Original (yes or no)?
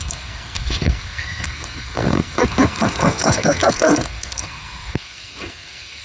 no